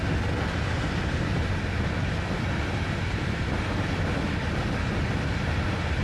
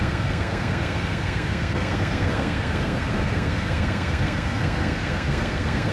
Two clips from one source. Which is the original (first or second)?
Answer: first